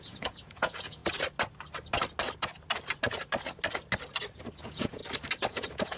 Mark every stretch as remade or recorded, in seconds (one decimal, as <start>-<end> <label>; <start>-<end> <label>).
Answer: 0.0-1.0 remade; 1.0-4.6 recorded; 4.6-5.0 remade; 5.0-5.5 recorded; 5.5-6.0 remade